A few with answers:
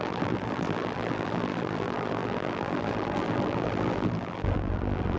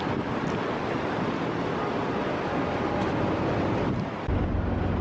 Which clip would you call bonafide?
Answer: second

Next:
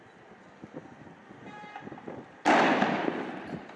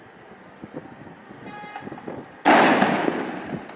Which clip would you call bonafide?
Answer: second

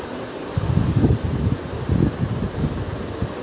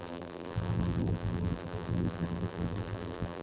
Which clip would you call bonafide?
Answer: first